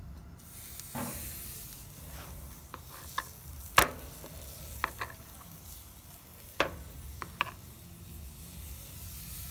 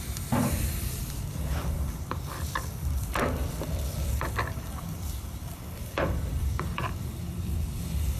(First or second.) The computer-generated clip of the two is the second